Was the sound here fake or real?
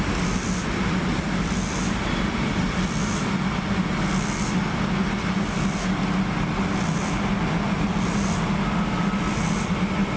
real